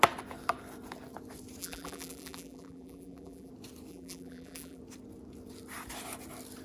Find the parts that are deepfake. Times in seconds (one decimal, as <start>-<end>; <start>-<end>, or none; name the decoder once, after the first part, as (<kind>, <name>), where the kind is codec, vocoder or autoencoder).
1.6-3.5 (vocoder, BigVGAN v2); 3.9-4.8